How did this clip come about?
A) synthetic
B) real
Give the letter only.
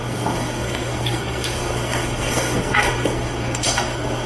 A